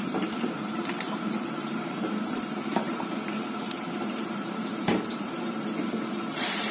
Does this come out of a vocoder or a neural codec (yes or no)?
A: yes